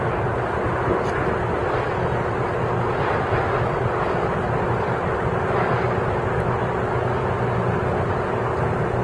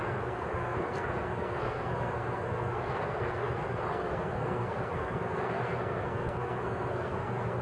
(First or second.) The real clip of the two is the first